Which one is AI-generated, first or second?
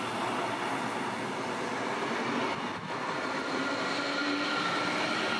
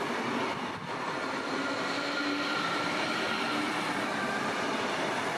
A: second